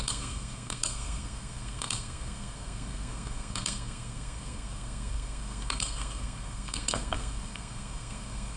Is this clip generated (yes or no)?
yes